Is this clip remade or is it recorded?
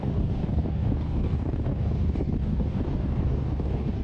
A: remade